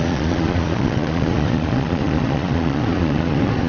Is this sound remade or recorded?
remade